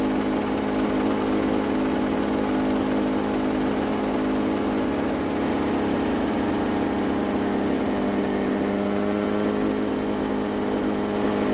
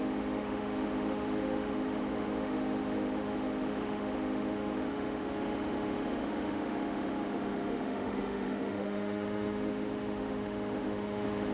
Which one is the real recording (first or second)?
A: first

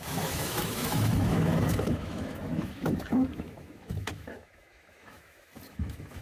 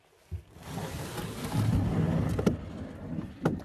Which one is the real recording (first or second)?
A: second